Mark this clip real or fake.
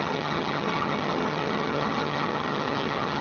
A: fake